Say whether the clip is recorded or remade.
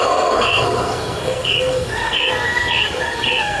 remade